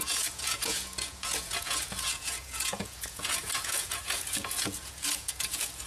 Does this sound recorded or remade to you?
remade